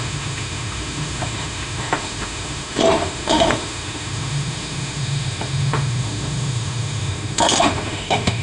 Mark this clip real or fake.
fake